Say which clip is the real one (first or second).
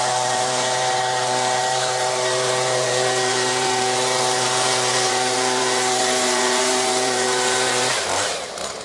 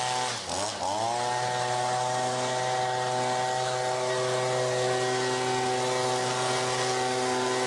second